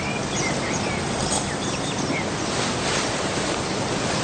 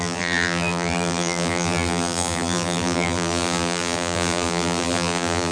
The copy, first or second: second